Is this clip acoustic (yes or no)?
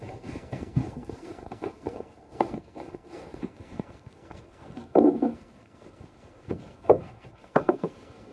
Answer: no